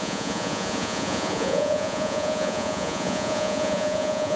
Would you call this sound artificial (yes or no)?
yes